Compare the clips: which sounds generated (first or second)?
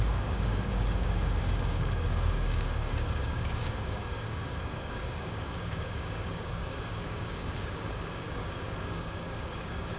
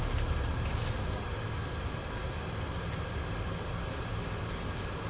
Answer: first